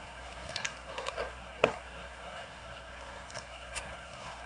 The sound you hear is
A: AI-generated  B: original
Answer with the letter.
A